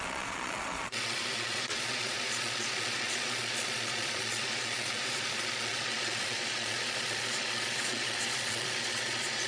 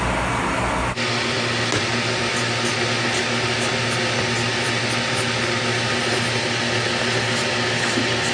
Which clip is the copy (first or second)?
first